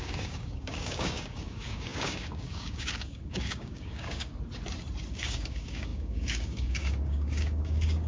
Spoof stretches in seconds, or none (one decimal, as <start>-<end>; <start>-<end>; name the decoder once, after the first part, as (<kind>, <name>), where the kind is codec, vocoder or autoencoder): 0.0-4.3 (codec, DAC); 5.1-8.1